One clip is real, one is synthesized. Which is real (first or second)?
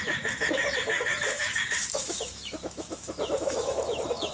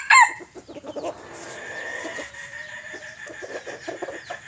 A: second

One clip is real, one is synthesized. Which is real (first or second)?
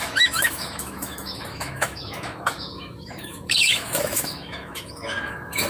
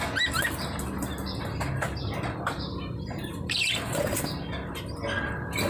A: second